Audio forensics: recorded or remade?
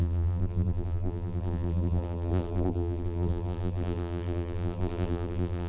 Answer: remade